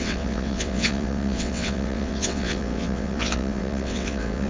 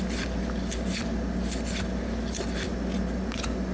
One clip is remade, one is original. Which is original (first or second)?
second